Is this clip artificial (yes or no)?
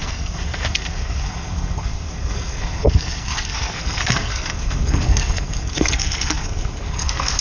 yes